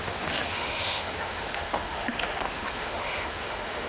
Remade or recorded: remade